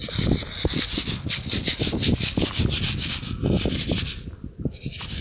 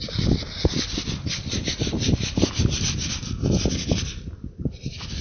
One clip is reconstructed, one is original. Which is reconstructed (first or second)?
second